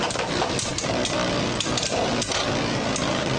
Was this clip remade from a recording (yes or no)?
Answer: no